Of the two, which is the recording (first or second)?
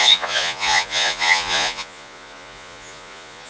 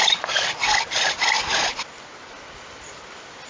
second